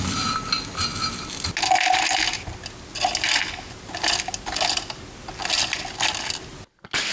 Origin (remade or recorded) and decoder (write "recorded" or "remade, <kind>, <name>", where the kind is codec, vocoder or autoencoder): recorded